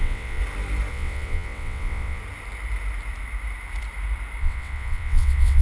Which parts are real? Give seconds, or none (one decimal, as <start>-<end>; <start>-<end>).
0.4-0.9; 2.2-4.4